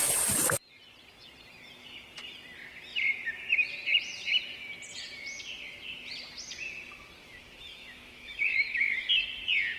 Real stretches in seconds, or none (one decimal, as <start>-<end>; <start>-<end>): 0.0-7.7; 9.1-9.8